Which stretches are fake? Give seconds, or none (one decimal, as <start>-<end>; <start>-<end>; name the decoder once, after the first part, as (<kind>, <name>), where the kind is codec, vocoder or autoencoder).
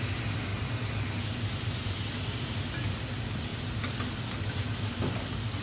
none